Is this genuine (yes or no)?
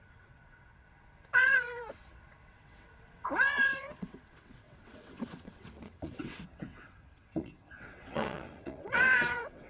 no